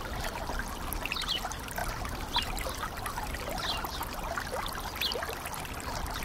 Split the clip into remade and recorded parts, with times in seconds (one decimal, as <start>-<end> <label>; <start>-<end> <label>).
0.0-6.2 recorded